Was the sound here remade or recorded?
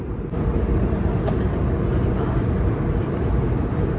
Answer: remade